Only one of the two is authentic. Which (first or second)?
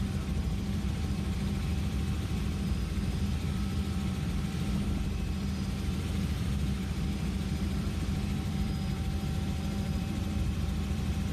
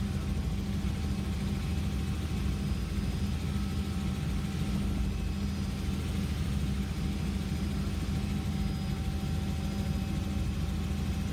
second